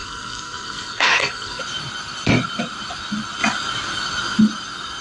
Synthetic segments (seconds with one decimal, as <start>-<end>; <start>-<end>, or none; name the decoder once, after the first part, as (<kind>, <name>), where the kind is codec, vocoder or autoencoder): 0.0-1.6 (codec, SNAC)